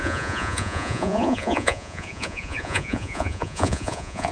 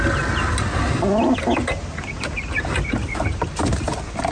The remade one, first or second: first